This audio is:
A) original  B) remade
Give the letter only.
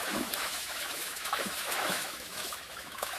B